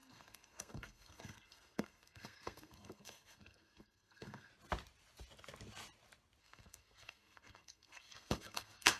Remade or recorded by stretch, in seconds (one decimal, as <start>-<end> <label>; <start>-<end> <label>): 0.0-4.5 remade; 4.5-6.4 recorded; 6.4-9.0 remade